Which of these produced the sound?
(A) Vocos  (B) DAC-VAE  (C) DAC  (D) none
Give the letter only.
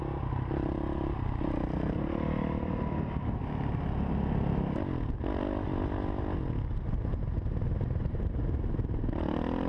D